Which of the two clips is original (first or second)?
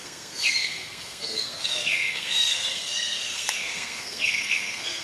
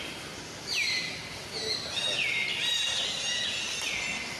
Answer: second